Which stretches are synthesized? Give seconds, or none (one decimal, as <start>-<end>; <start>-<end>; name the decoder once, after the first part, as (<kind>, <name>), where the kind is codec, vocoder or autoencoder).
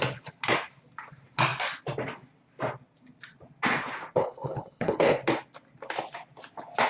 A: 4.2-5.2 (codec, HILCodec)